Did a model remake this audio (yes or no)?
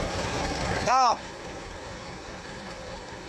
yes